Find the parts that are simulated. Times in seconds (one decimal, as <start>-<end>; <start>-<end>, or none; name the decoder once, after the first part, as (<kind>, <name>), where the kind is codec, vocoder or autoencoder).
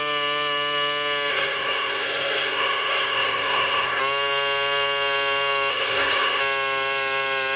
1.3-4.0 (codec, SNAC); 5.7-6.4